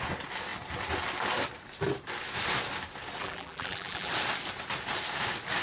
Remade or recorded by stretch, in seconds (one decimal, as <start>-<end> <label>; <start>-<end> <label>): 0.0-3.2 recorded; 3.2-4.1 remade; 4.1-5.6 recorded